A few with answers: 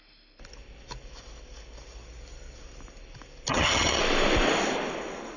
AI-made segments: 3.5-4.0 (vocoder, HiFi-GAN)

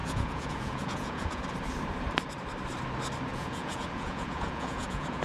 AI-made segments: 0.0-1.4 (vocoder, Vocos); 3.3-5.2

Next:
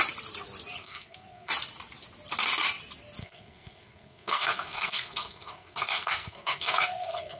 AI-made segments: 0.8-1.5 (codec, SNAC); 3.2-7.4

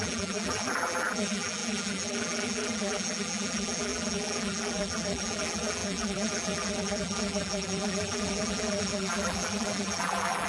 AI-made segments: 0.0-10.5 (vocoder, BigVGAN v2)

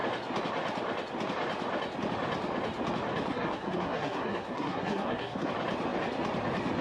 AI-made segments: 3.3-5.5 (codec, SNAC)